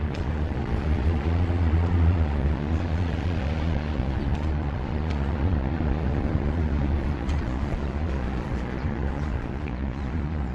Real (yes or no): no